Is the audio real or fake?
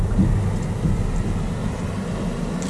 real